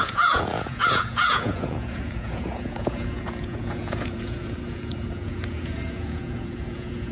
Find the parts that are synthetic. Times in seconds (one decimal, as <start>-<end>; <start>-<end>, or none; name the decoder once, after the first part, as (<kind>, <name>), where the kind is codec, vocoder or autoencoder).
0.0-7.1 (vocoder, Vocos)